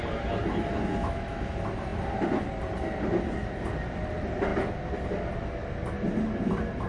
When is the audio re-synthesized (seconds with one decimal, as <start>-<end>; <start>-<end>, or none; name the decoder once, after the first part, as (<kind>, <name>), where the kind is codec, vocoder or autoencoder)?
1.0-1.5 (autoencoder, DAC-VAE)